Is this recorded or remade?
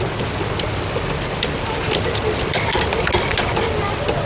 recorded